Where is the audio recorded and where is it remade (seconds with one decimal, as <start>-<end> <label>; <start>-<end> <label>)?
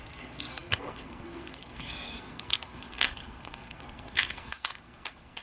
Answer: 0.0-5.4 remade